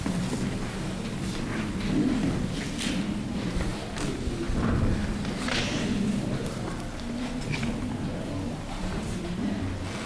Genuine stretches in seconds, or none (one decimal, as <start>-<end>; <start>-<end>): 0.0-10.1